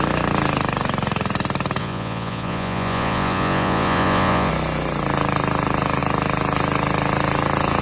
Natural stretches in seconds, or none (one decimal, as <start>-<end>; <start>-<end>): 0.0-1.8; 4.5-7.8